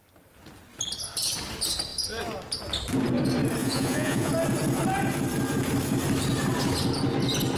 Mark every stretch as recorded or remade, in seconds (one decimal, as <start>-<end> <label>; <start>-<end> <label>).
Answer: 0.0-3.6 recorded; 3.6-4.3 remade; 4.3-7.6 recorded